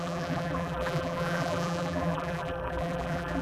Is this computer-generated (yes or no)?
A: yes